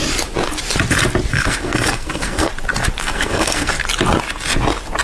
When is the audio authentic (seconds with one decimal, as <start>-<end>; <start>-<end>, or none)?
0.0-1.3; 2.5-3.0; 3.7-5.0